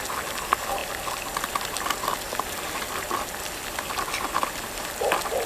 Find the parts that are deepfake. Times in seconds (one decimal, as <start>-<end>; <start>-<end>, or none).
none